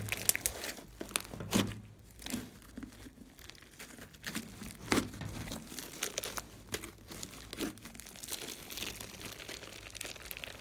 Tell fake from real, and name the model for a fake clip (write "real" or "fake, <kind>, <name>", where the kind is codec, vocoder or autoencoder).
real